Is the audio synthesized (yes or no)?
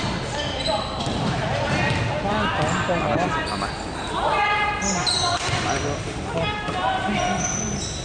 no